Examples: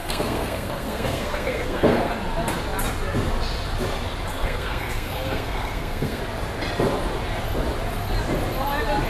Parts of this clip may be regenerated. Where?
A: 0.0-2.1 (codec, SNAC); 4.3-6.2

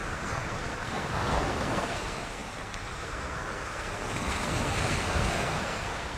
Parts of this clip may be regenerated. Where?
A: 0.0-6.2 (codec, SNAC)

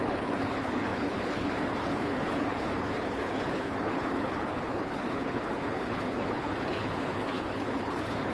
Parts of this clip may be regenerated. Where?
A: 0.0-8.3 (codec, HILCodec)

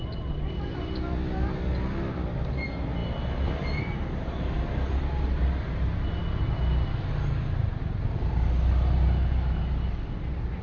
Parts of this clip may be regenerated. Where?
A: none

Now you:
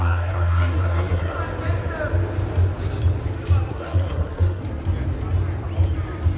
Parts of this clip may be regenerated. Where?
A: 0.0-1.4 (codec, SNAC); 3.7-4.6